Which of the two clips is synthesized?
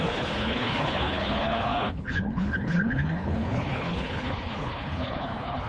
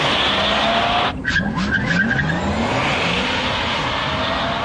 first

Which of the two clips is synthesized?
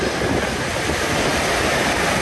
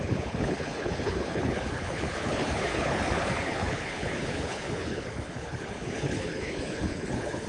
second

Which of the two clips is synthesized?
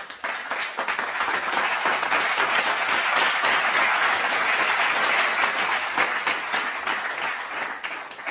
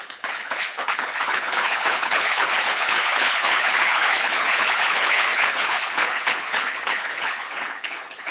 second